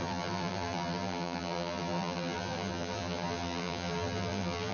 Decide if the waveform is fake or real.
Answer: fake